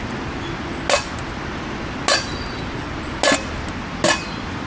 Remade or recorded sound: recorded